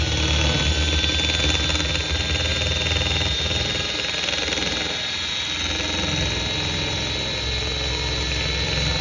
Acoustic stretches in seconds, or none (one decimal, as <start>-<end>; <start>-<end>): 0.0-9.0